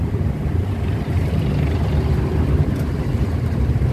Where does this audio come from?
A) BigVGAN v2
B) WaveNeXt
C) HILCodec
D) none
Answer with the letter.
A